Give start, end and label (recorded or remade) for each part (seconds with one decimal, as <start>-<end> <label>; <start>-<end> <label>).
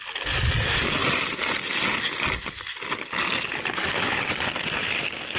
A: 0.0-1.0 remade; 1.0-3.7 recorded; 3.7-5.4 remade